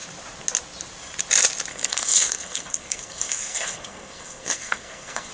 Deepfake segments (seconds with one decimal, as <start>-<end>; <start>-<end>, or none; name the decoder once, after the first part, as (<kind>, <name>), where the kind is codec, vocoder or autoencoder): 1.7-5.3 (codec, SNAC)